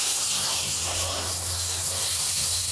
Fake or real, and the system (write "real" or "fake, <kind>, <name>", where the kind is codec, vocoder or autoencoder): fake, codec, SNAC